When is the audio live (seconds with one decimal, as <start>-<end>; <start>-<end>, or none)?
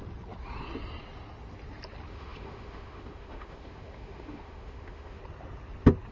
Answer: 0.0-2.1; 5.2-6.1